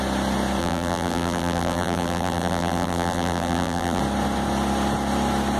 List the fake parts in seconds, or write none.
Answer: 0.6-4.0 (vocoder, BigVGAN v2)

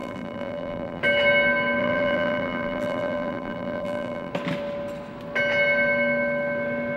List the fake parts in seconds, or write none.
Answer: 0.0-1.0 (vocoder, BigVGAN v2); 1.8-4.3

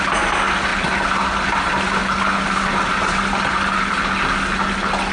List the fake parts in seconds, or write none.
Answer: none

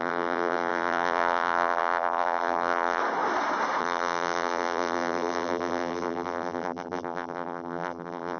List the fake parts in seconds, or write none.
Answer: 0.0-3.0 (vocoder, BigVGAN v2); 3.8-8.4

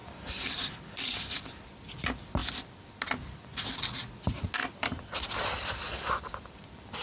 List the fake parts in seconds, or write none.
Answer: 0.8-2.4 (vocoder, BigVGAN v2); 4.8-7.0

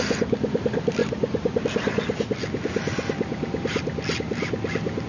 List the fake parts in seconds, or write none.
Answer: 1.0-1.6 (vocoder, BigVGAN v2)

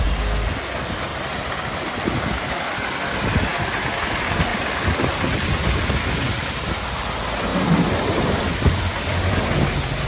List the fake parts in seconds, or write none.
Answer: 1.1-1.8 (vocoder, BigVGAN v2); 4.5-5.2; 7.5-9.5

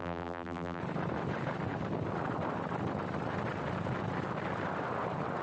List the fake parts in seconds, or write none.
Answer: 0.0-0.8 (vocoder, BigVGAN v2)